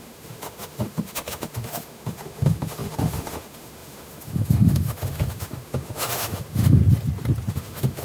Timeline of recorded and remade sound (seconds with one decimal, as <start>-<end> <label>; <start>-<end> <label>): 0.0-6.8 remade; 6.8-7.5 recorded; 7.5-8.0 remade